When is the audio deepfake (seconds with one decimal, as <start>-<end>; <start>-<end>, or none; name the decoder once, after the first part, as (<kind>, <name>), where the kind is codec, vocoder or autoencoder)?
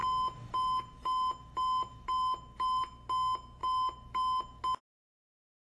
0.0-2.8 (autoencoder, DAC-VAE); 3.6-4.6